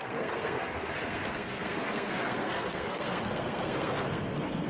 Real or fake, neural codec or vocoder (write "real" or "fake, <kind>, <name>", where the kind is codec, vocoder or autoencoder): fake, codec, SNAC